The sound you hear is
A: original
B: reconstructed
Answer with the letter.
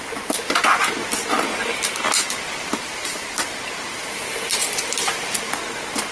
A